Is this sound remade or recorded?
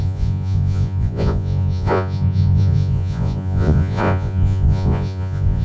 remade